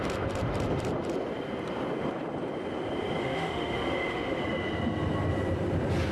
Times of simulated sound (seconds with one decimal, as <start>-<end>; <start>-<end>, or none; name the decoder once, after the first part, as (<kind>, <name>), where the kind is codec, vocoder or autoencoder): 3.2-4.4 (autoencoder, DAC-VAE)